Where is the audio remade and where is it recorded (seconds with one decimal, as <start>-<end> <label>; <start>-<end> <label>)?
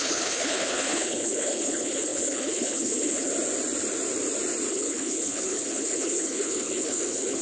0.0-3.3 remade; 3.3-4.7 recorded; 4.7-7.4 remade